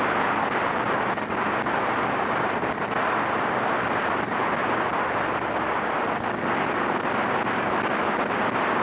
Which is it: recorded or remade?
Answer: recorded